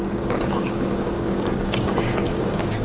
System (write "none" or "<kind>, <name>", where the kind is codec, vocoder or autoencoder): codec, DAC